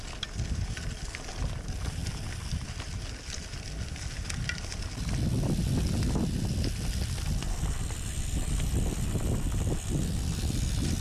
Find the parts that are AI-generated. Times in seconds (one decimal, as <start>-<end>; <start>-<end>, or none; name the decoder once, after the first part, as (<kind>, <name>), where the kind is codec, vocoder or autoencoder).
none